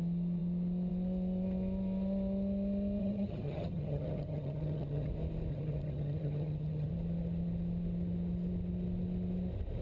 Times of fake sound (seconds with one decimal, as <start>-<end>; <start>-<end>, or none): 3.0-5.1; 5.5-6.9

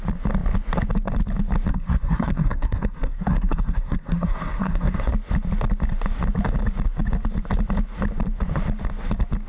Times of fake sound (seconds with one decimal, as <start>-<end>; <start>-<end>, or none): 1.7-5.1